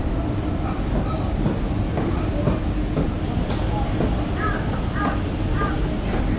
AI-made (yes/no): no